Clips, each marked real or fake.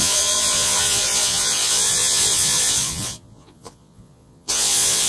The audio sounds fake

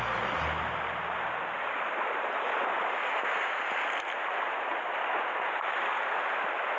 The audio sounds real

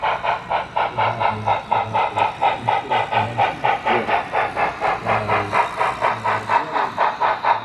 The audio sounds real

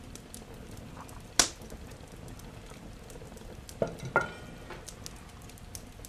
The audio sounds real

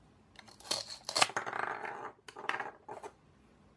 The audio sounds real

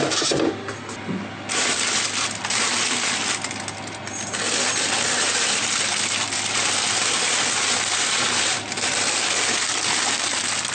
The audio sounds real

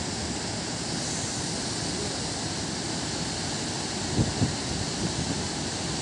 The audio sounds real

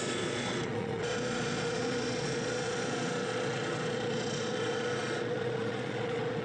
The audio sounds fake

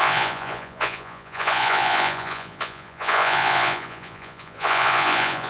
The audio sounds fake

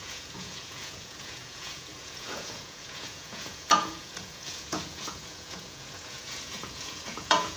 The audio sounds fake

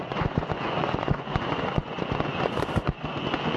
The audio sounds fake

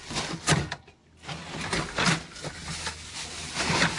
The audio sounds real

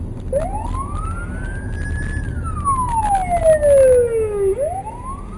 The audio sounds real